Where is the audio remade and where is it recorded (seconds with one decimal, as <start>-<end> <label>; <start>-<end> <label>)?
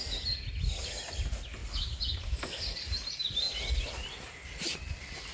0.0-5.3 recorded